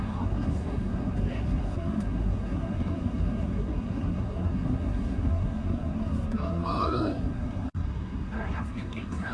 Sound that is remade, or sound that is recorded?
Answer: remade